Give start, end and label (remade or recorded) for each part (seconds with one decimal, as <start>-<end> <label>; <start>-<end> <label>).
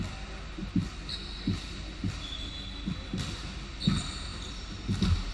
0.0-5.3 recorded